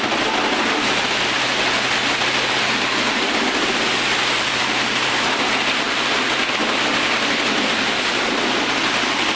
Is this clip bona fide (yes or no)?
yes